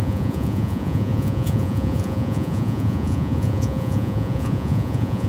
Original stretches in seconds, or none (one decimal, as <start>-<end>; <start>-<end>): none